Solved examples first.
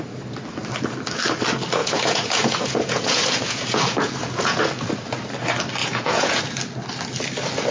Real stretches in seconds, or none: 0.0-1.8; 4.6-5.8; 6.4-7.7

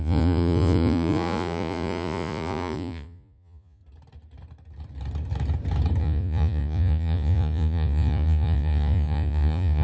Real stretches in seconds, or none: 3.8-6.0